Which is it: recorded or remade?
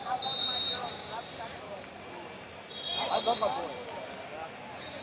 recorded